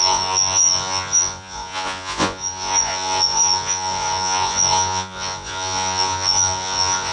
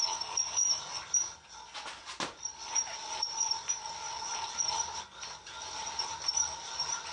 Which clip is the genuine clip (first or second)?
second